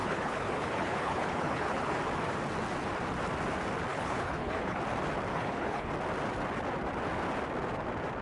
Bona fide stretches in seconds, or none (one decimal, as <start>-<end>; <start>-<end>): 2.0-3.9; 4.8-5.3; 5.9-8.2